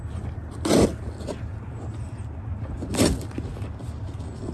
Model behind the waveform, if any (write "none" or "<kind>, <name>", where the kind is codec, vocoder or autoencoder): none